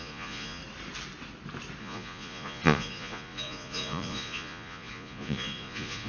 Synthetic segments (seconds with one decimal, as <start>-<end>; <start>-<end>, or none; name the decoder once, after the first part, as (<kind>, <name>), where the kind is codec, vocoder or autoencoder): 0.0-0.6 (vocoder, Vocos); 1.8-6.1